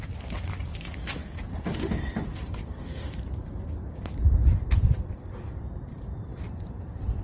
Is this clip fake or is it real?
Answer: fake